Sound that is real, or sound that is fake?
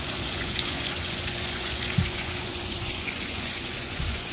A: fake